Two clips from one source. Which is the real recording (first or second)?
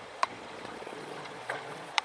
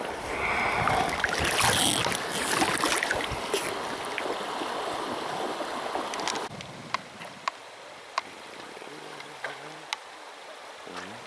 second